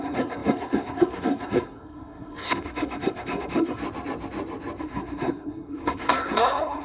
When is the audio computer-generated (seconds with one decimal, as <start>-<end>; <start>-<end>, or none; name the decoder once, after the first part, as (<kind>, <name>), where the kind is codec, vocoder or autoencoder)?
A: 0.0-3.8 (codec, SNAC); 4.8-6.8